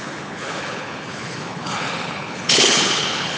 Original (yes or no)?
no